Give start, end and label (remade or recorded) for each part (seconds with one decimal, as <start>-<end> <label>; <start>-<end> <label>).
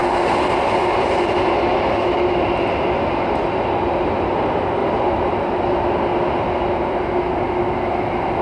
0.0-4.8 recorded; 4.8-6.1 remade; 6.1-8.4 recorded